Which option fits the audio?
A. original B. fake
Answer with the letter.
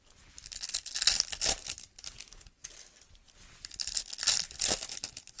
A